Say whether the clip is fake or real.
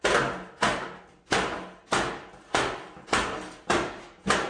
real